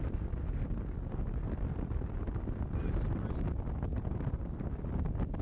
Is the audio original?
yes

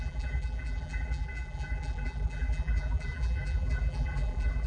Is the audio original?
no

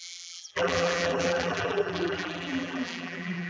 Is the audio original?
no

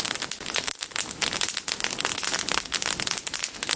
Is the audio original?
yes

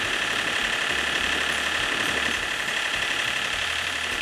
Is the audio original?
no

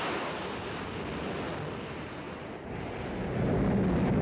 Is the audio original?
yes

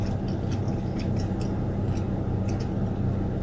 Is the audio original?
yes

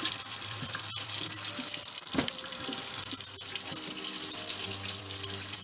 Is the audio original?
no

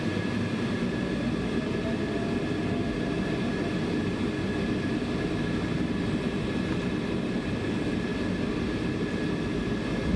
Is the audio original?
yes